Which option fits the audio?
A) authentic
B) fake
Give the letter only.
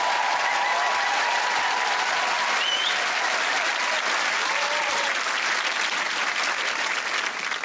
A